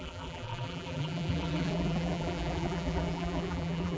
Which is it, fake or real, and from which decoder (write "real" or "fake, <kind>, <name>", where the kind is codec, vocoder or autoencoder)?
fake, vocoder, BigVGAN v2